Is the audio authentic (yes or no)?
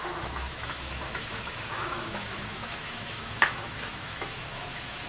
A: no